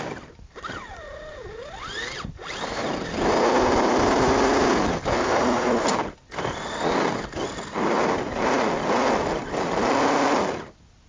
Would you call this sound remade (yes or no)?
yes